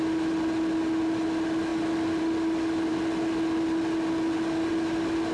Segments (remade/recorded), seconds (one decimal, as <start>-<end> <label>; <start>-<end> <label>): 0.0-5.3 recorded